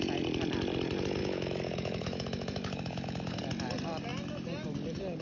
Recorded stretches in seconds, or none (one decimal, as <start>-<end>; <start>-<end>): 0.0-1.2; 3.4-5.2